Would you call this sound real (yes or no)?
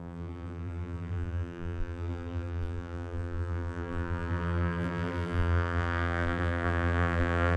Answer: no